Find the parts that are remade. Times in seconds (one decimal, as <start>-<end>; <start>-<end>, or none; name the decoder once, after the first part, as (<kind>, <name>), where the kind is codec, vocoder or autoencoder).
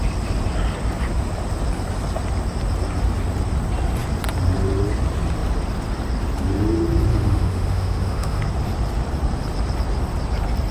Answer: 7.1-8.4 (autoencoder, DAC-VAE)